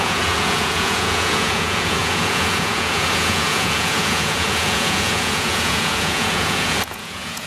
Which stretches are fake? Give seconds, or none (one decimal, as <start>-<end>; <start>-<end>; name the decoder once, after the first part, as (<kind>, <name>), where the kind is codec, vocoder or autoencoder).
0.0-7.5 (vocoder, Vocos)